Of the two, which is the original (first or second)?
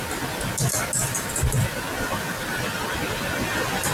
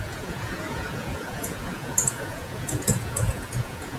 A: first